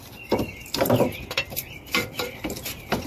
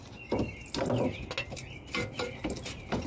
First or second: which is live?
second